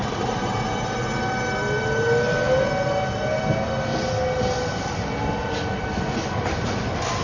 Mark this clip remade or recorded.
recorded